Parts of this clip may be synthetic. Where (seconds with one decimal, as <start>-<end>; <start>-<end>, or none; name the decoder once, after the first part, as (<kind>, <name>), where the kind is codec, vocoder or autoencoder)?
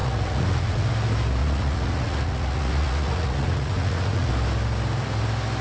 0.0-0.9 (vocoder, Vocos); 1.4-4.3